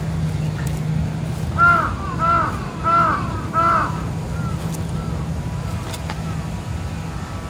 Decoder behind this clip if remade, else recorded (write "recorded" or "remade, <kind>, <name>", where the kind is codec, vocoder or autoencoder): recorded